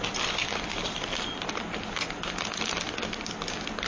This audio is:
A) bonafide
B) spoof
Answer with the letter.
A